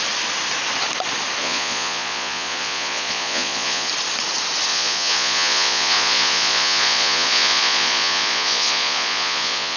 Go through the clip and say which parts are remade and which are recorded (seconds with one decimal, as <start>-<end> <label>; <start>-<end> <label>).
0.0-1.4 recorded; 1.4-3.9 remade; 3.9-4.7 recorded; 4.7-9.8 remade